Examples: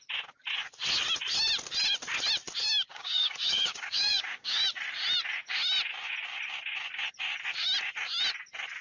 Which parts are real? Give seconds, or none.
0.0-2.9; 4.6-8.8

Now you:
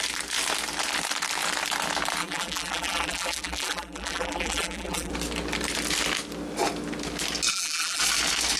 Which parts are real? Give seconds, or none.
0.0-2.2; 5.1-7.5; 8.0-8.6

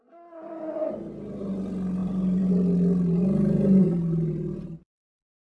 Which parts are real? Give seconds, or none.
0.0-2.0; 2.5-3.8; 4.7-5.5

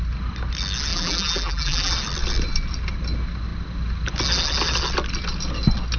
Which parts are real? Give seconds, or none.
0.0-0.9; 1.9-6.0

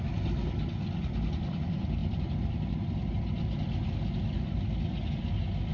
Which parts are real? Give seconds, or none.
0.0-5.7

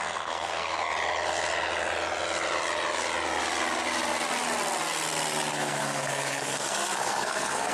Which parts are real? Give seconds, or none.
0.9-5.5